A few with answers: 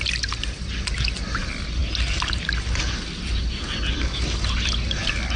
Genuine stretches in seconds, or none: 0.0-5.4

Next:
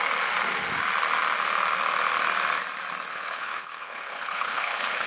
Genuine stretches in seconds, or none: 0.0-3.1

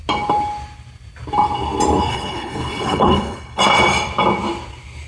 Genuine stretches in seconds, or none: 0.0-2.1; 3.6-5.1

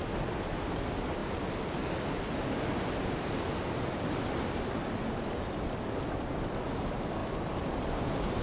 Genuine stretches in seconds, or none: 0.0-8.4